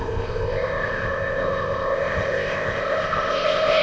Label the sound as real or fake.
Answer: fake